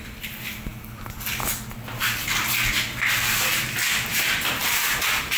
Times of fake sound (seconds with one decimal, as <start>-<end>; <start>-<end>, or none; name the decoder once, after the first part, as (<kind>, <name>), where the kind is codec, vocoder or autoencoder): 4.6-5.4 (vocoder, BigVGAN v2)